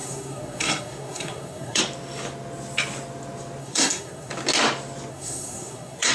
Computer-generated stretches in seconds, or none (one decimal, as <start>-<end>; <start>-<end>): 0.0-1.8; 3.6-4.3; 5.1-6.1